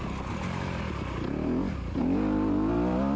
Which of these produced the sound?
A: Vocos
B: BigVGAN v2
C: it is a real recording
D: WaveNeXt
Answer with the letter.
C